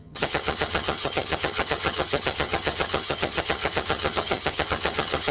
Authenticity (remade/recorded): remade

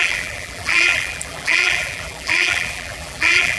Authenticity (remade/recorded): remade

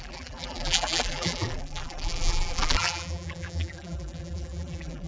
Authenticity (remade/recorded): remade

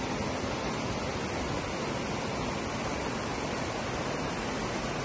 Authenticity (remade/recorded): recorded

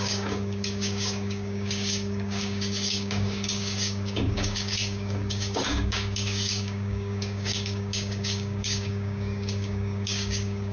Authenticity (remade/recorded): remade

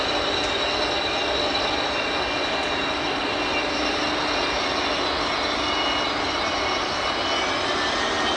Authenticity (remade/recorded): recorded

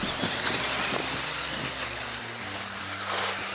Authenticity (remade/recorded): recorded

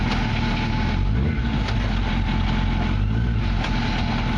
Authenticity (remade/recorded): recorded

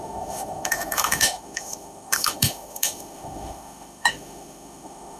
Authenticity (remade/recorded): remade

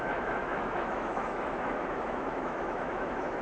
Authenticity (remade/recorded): remade